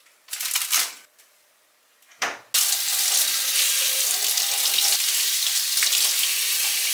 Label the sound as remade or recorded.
recorded